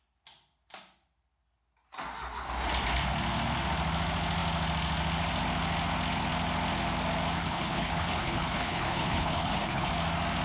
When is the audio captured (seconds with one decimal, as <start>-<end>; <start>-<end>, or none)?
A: 0.0-7.4; 9.9-10.4